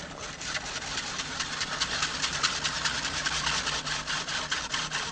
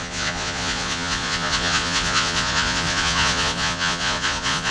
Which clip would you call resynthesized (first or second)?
second